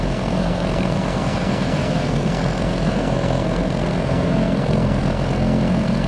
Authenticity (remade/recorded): remade